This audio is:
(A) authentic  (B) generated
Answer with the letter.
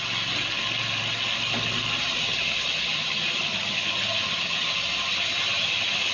A